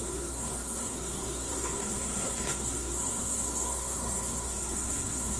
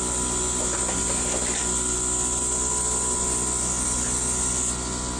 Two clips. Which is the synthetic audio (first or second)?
first